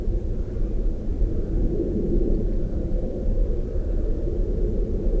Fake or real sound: fake